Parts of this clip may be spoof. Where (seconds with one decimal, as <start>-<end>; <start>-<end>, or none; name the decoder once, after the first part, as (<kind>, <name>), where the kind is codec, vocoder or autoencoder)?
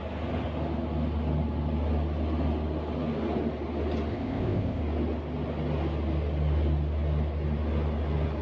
4.1-4.8 (codec, ZipCodec)